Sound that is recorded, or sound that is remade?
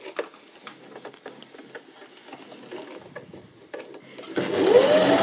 recorded